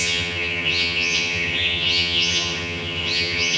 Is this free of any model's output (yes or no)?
no